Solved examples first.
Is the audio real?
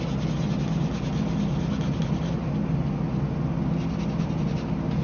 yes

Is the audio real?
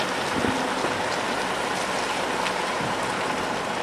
yes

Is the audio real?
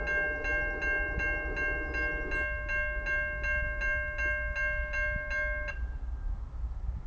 yes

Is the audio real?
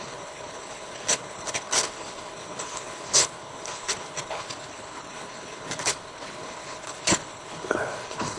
no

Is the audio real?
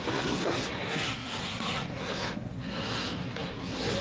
no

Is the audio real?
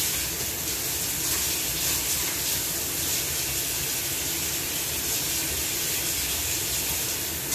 yes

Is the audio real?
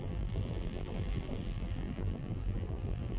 no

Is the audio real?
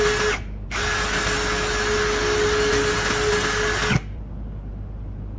yes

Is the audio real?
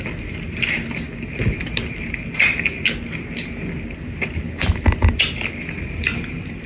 yes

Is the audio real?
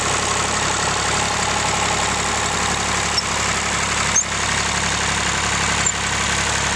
yes